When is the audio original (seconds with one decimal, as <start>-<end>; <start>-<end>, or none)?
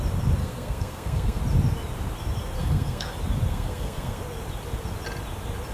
0.0-0.4; 1.4-2.6; 3.1-3.5; 4.2-5.7